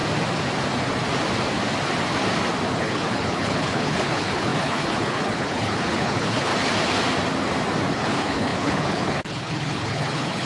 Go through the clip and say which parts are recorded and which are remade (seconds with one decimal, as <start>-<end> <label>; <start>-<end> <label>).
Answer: 0.0-2.8 recorded; 2.8-6.5 remade; 6.5-7.9 recorded; 7.9-10.5 remade